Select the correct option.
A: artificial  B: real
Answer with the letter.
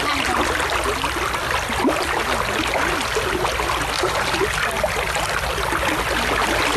B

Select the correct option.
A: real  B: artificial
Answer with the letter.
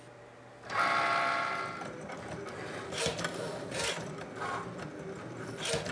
A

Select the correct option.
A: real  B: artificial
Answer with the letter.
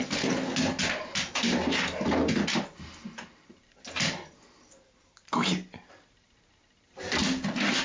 A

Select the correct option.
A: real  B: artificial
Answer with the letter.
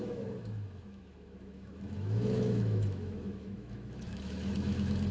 B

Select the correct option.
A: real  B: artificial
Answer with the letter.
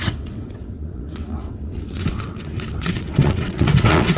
B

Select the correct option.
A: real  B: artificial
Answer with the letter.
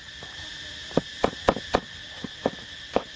A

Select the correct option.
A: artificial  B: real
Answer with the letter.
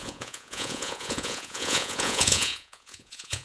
A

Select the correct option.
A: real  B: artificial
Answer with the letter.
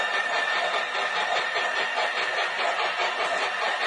B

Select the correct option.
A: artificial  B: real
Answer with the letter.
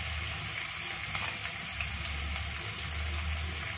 B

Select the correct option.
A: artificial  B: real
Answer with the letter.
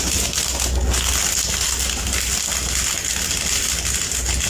B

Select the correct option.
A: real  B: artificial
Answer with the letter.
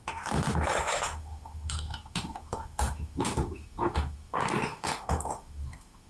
B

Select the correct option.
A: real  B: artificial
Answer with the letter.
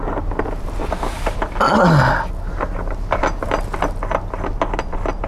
A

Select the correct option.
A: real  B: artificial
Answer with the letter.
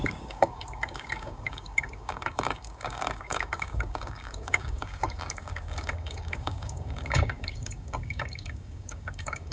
B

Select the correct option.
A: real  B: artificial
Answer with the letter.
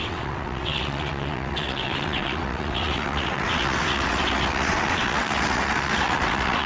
B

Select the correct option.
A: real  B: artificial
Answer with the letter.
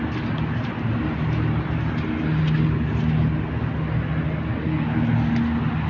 A